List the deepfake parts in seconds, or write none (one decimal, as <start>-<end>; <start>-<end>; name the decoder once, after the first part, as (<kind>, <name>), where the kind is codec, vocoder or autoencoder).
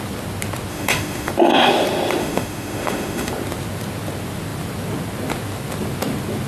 0.7-1.3 (autoencoder, DAC-VAE); 2.2-3.3